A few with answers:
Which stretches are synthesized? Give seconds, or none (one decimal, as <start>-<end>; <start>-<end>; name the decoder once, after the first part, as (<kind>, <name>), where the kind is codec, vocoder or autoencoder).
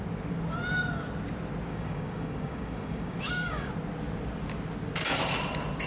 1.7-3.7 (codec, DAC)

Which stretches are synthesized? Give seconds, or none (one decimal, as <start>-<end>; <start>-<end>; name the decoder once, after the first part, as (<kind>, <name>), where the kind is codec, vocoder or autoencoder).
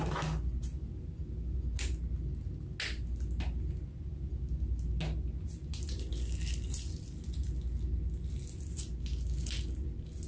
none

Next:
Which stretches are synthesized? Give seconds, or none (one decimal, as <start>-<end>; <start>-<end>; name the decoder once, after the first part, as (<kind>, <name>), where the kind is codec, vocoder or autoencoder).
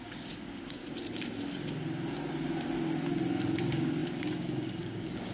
0.0-0.8 (codec, DAC); 3.6-5.3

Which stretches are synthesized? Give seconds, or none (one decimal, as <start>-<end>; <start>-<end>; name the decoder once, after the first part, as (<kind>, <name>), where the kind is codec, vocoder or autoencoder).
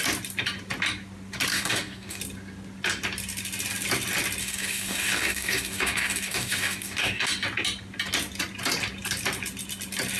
1.5-2.2 (codec, DAC); 4.4-7.3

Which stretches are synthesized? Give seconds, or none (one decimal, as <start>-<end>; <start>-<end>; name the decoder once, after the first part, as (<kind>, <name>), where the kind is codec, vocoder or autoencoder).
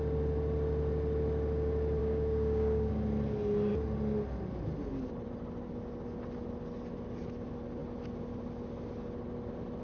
2.0-2.9 (codec, DAC)